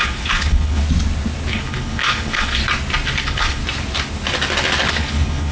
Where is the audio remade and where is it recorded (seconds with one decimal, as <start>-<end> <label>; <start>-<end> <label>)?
0.0-0.8 remade; 0.8-1.5 recorded; 1.5-2.6 remade; 2.6-3.2 recorded; 3.2-3.6 remade; 3.6-4.9 recorded; 4.9-5.5 remade